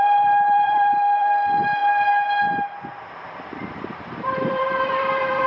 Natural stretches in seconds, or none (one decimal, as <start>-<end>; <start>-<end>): 1.8-3.5